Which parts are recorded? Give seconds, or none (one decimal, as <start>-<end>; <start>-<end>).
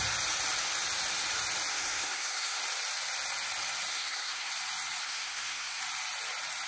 0.0-1.7; 2.6-3.9; 4.5-5.0; 5.8-6.7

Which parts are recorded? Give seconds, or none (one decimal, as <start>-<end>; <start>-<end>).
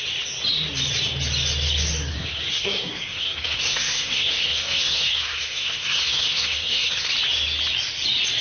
0.0-2.1; 7.1-8.4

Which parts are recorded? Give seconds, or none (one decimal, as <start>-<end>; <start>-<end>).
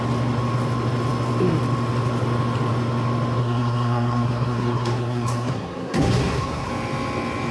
0.0-3.4; 6.7-7.5